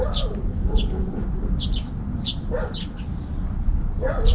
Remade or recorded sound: recorded